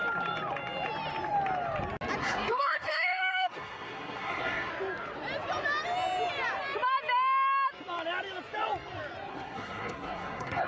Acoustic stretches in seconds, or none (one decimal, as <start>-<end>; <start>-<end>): 0.0-2.2; 4.7-9.3